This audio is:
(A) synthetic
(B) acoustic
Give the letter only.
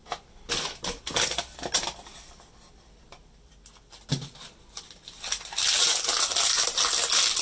B